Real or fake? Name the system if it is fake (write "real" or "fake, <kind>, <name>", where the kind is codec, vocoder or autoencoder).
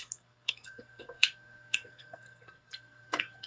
fake, codec, SNAC